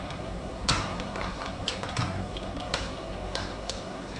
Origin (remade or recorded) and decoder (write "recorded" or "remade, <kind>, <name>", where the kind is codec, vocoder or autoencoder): remade, codec, SNAC